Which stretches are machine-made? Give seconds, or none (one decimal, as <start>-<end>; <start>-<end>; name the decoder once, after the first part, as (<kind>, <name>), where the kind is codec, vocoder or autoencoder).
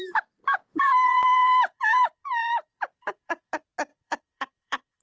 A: 0.5-3.5 (vocoder, Vocos); 3.9-5.0